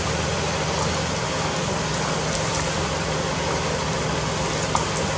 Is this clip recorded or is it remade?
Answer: recorded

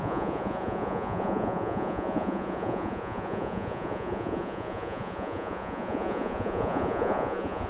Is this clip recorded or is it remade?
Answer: remade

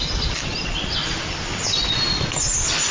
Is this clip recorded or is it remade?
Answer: recorded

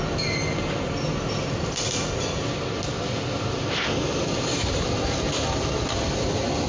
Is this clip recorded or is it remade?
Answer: recorded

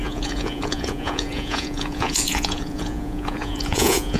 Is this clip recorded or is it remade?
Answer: remade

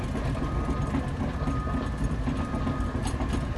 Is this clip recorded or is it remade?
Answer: recorded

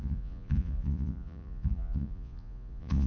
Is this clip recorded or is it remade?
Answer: remade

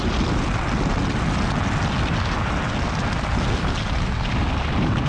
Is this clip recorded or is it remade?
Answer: recorded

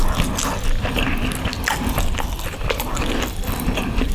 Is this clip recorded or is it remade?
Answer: recorded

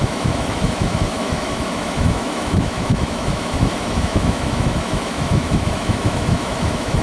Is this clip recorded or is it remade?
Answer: remade